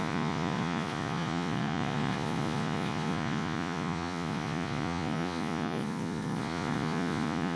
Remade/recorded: remade